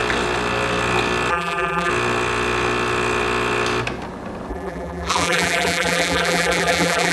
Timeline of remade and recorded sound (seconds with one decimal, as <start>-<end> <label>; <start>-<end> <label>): 0.0-1.3 recorded; 1.3-1.9 remade; 1.9-4.5 recorded; 4.5-7.1 remade